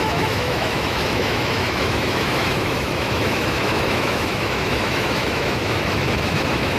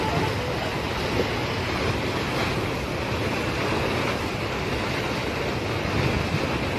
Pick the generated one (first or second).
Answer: first